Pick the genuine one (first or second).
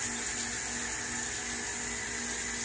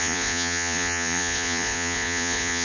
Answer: first